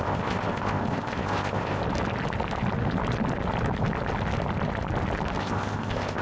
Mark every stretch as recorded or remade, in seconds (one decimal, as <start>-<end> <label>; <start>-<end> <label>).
0.0-1.8 remade; 1.8-5.4 recorded; 5.4-6.2 remade